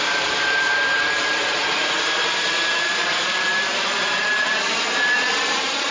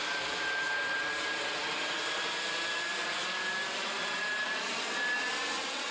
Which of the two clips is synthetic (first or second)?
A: first